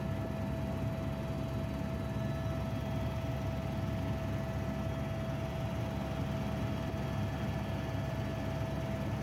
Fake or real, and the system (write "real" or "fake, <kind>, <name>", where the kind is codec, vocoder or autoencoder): real